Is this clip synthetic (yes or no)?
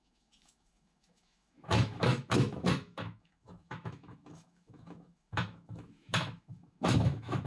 yes